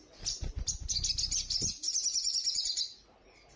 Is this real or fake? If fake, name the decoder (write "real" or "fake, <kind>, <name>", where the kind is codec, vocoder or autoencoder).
real